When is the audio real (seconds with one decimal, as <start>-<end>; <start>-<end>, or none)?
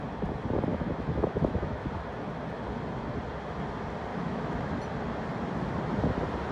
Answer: 0.0-0.7; 1.9-4.1; 4.7-6.5